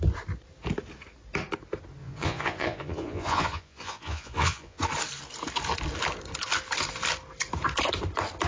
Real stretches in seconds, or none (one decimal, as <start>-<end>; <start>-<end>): 0.0-2.0; 4.8-8.5